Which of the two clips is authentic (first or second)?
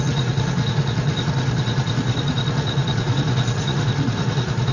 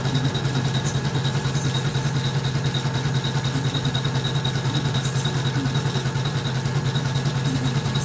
second